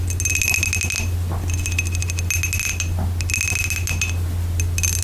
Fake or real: real